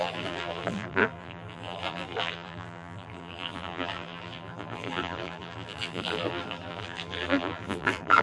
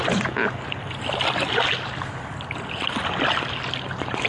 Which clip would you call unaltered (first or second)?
second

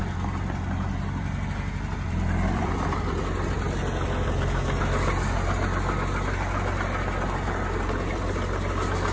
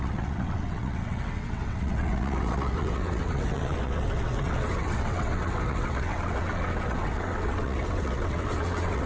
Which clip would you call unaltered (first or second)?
first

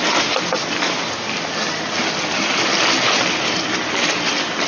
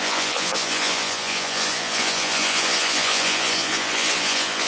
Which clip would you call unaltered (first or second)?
first